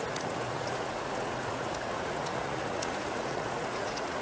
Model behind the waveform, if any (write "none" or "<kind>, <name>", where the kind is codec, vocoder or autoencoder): vocoder, Vocos